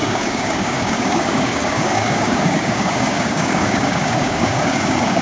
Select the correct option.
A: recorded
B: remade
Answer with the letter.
B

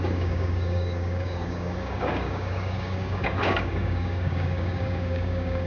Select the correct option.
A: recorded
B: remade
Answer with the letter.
B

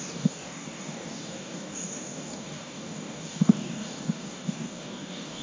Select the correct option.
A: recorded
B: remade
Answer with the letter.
B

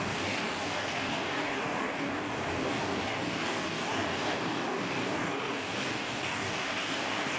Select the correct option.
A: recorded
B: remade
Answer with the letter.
B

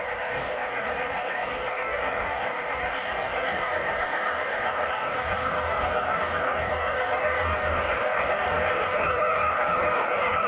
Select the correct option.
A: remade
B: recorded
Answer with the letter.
A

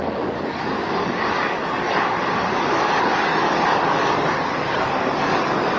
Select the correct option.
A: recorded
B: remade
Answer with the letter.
B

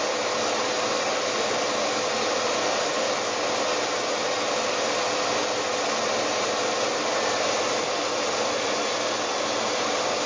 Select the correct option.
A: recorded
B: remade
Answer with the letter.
A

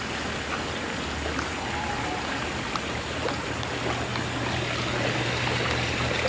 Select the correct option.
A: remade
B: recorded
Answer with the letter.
B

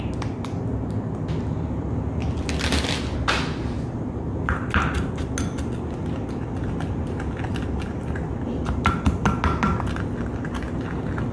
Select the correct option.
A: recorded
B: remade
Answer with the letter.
A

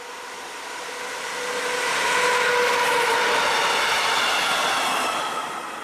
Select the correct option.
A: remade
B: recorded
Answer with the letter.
B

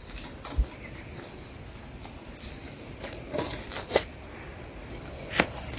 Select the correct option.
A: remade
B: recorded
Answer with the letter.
B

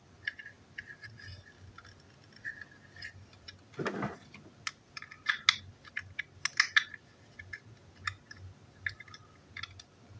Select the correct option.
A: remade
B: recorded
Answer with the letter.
B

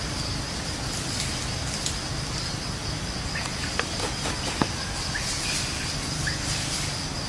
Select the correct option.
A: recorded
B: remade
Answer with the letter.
A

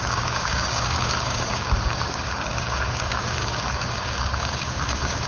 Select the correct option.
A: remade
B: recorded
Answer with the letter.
A